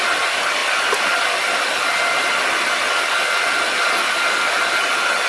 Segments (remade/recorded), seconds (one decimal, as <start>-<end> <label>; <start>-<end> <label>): 0.0-5.3 recorded